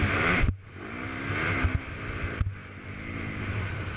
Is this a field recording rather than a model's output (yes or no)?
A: yes